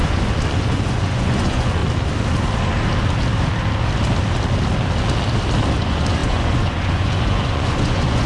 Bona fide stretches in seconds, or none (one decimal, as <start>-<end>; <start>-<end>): 1.8-5.8